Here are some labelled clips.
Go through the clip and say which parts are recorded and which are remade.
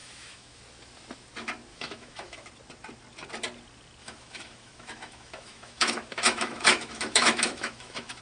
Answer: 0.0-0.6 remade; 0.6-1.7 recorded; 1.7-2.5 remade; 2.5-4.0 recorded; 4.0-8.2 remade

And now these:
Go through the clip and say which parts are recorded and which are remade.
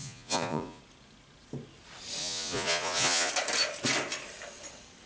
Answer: 0.0-0.8 remade; 0.8-2.2 recorded; 2.2-3.3 remade; 3.3-5.1 recorded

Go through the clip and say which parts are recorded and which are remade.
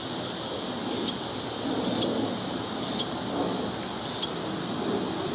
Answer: 0.0-5.3 recorded